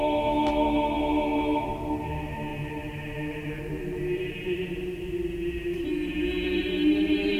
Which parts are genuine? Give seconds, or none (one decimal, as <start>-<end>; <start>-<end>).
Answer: none